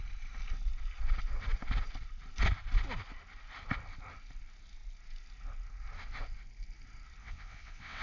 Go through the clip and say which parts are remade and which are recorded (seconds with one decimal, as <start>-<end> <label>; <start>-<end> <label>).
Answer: 0.0-7.2 recorded; 7.2-8.0 remade